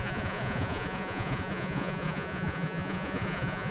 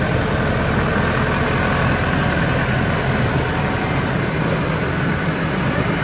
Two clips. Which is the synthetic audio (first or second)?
first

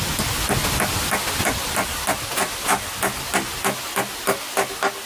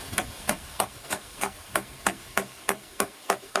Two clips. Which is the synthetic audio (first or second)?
second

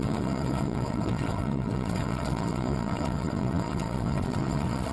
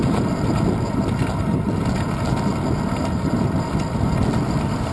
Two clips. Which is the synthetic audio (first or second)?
first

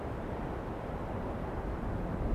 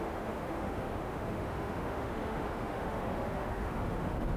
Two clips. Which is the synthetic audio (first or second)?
second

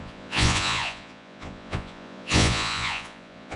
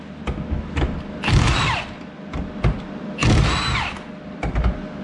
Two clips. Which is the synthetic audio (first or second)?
first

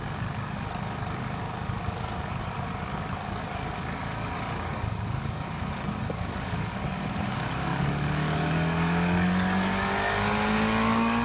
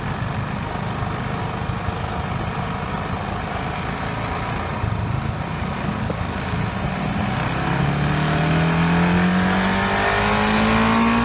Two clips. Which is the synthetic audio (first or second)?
first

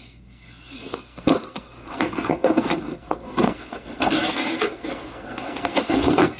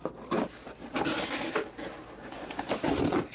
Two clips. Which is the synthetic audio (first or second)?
first